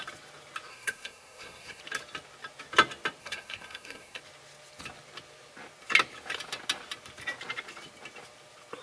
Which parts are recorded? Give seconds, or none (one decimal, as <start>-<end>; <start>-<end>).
0.0-0.7; 1.8-3.2; 4.2-8.8

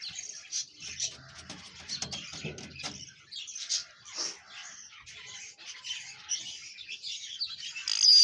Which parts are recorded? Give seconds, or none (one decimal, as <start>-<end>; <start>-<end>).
0.0-8.2

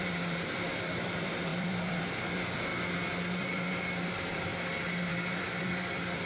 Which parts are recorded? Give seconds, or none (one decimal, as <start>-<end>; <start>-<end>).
2.7-3.3; 4.5-5.1

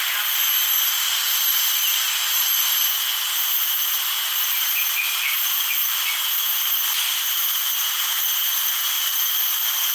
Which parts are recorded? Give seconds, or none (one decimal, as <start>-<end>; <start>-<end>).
7.4-9.3

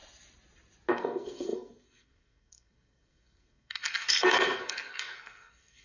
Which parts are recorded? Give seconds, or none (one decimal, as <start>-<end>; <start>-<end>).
0.0-0.9